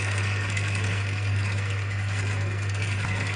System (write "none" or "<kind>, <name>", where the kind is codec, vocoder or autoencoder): codec, SNAC